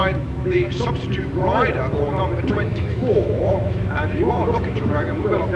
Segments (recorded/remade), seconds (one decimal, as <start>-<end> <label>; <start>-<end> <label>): 0.0-0.9 remade; 0.9-2.7 recorded; 2.7-4.9 remade; 4.9-5.6 recorded